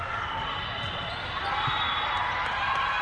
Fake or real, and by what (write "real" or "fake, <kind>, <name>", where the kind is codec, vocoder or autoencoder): real